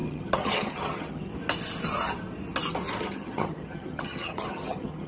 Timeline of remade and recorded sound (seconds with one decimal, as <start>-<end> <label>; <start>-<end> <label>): 0.0-1.3 remade; 1.3-3.0 recorded; 3.0-5.1 remade